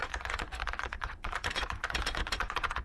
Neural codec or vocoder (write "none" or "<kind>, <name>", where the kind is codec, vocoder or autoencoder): vocoder, Vocos